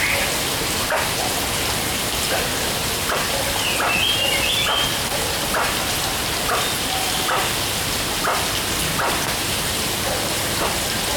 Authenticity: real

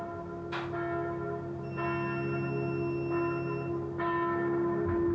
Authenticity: real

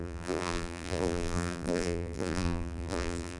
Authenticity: fake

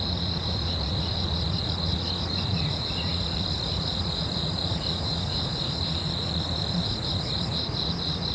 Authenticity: fake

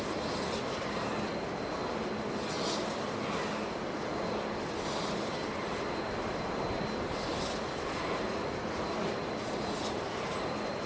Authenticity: real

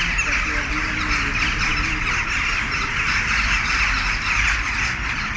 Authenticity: real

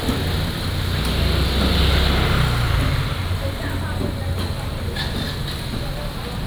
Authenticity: real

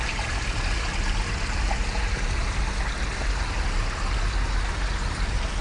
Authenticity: real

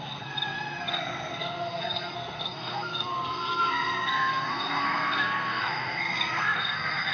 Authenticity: fake